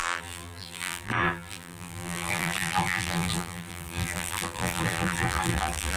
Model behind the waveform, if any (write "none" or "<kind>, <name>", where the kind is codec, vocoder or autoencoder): vocoder, BigVGAN v2